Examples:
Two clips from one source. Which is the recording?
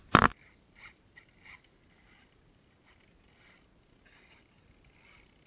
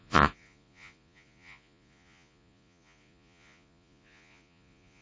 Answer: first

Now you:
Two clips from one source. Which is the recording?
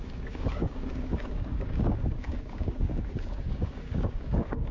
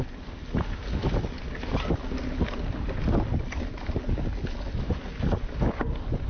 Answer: second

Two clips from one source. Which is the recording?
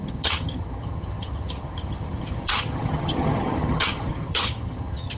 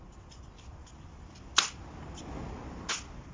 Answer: second